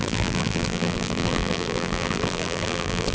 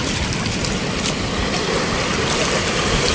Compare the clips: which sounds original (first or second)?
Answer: second